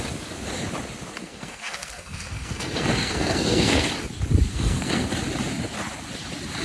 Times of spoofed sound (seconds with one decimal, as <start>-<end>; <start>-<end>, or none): 1.2-3.9; 4.5-5.1